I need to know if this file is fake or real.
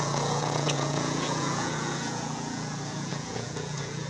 fake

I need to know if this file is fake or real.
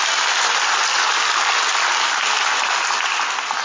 real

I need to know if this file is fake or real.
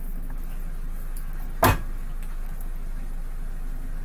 real